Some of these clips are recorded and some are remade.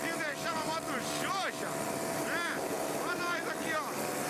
remade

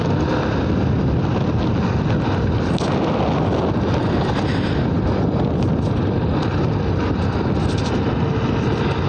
recorded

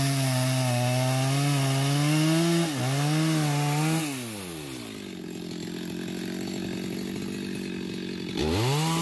recorded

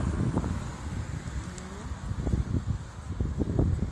recorded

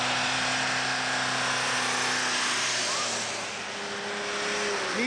recorded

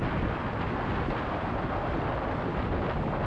recorded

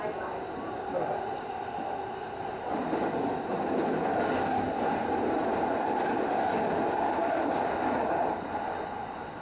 recorded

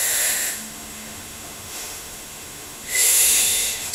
remade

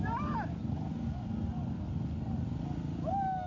recorded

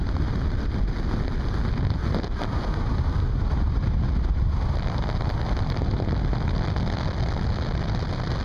recorded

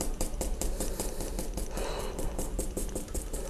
remade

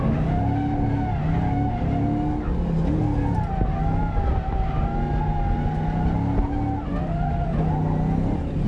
recorded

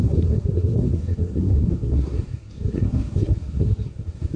remade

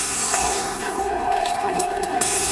remade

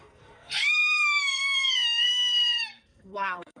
remade